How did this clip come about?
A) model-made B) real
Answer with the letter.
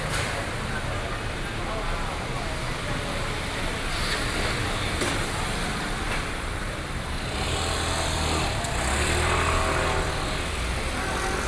B